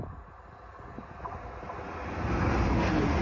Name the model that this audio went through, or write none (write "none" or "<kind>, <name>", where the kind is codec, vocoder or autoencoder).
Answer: none